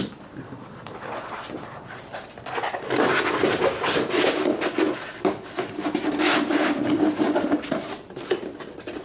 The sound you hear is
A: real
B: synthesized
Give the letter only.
B